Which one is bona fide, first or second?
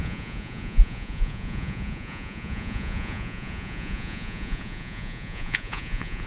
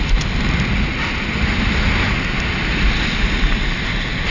second